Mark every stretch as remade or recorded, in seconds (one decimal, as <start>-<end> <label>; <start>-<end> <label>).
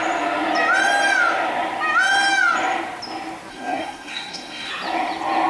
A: 0.0-3.5 recorded; 3.5-4.7 remade; 4.7-5.5 recorded